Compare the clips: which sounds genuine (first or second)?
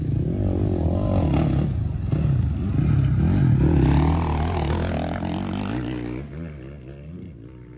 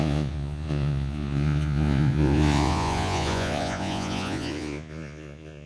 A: first